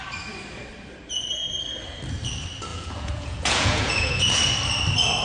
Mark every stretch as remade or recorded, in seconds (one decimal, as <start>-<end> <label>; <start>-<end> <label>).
0.0-2.7 recorded; 2.7-4.3 remade; 4.3-5.2 recorded